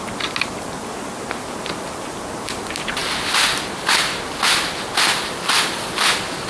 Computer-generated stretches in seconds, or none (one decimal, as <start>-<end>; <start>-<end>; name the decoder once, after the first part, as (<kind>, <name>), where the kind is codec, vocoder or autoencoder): 3.0-4.5 (vocoder, BigVGAN v2)